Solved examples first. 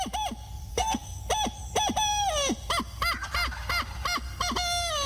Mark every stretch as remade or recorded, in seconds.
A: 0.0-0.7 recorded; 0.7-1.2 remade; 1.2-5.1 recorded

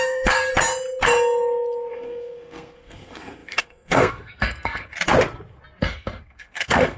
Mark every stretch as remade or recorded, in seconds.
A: 0.0-0.5 remade; 0.5-1.9 recorded; 1.9-4.9 remade; 4.9-5.8 recorded; 5.8-7.0 remade

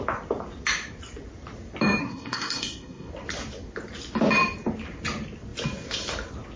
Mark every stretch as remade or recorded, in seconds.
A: 0.0-2.0 recorded; 2.0-3.1 remade; 3.1-6.6 recorded

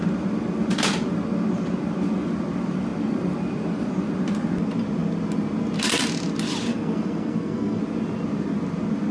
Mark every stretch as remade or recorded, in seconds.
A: 0.0-6.7 recorded; 6.7-7.8 remade; 7.8-9.1 recorded

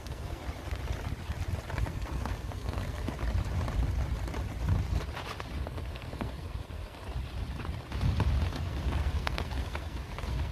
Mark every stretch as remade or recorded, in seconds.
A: 0.0-0.4 remade; 0.4-1.8 recorded; 1.8-3.2 remade; 3.2-5.6 recorded; 5.6-7.0 remade; 7.0-8.5 recorded; 8.5-10.5 remade

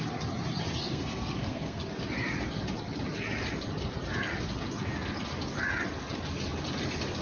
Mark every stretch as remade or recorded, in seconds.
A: 0.0-0.8 recorded; 0.8-1.9 remade; 1.9-7.2 recorded

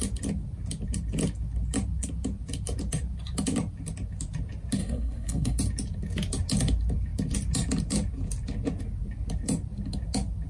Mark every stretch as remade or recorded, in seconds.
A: 0.0-4.8 recorded; 4.8-5.6 remade; 5.6-10.5 recorded